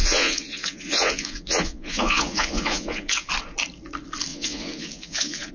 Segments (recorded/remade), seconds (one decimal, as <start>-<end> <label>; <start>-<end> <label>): 0.0-3.3 remade; 3.3-4.3 recorded; 4.3-5.5 remade